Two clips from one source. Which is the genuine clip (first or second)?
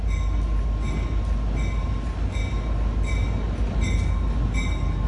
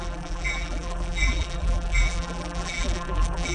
first